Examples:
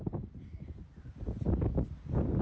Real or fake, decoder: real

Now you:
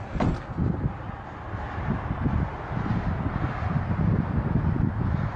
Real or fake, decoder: real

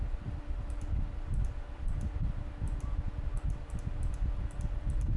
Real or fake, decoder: real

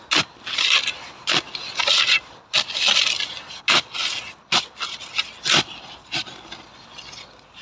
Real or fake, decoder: real